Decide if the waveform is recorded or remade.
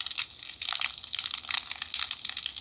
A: recorded